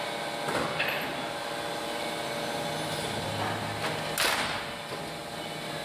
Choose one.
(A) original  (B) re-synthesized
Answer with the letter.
A